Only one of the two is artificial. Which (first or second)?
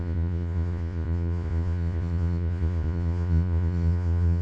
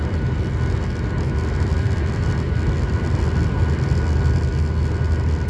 first